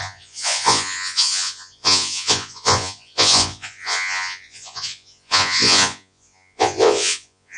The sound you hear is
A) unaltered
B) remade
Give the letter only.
B